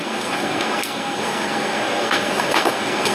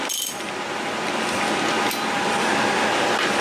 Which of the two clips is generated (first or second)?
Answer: first